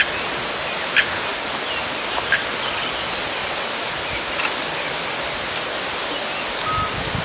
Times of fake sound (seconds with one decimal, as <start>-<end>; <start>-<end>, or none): none